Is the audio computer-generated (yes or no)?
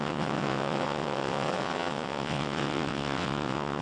yes